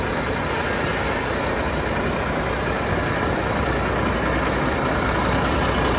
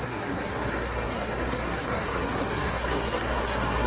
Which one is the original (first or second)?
first